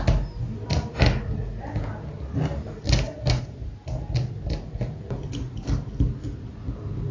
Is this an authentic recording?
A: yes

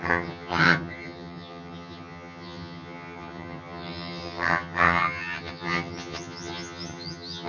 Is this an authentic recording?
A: no